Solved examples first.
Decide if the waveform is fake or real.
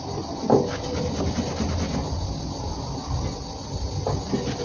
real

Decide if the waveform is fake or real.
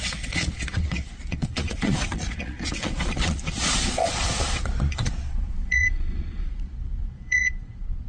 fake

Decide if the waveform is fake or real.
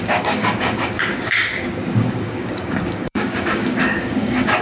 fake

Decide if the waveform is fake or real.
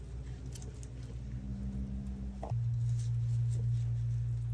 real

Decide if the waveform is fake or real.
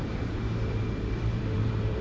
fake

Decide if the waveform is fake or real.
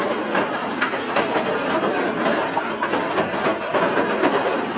real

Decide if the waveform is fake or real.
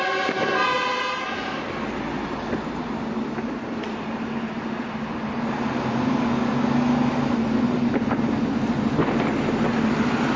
real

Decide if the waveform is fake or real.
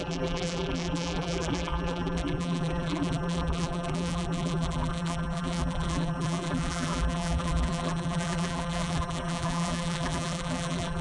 fake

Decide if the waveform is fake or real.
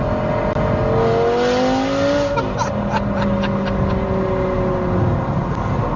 real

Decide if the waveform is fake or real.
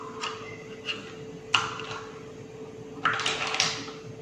real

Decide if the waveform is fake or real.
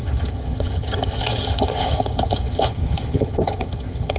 fake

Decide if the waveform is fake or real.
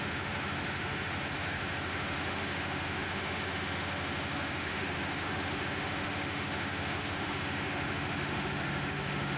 fake